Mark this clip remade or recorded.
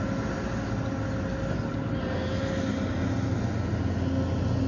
recorded